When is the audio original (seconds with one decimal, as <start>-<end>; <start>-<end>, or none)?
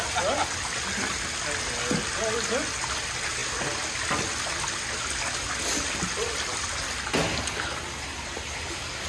0.0-9.1